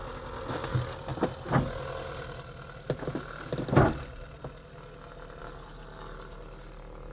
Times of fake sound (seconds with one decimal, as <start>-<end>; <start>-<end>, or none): none